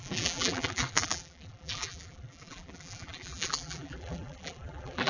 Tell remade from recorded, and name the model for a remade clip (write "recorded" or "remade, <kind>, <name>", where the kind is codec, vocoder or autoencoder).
remade, vocoder, BigVGAN v2